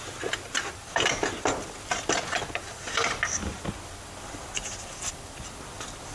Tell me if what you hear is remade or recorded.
remade